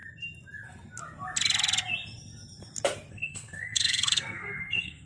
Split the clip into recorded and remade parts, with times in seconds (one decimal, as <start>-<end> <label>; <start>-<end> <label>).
0.0-3.1 recorded; 3.1-5.1 remade